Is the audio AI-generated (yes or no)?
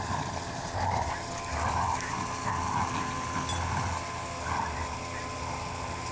no